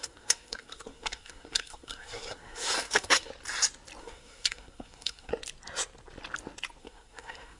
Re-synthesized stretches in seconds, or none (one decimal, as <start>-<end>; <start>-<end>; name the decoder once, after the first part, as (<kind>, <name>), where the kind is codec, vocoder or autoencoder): 0.0-3.3 (codec, SNAC); 4.0-5.3; 6.8-7.6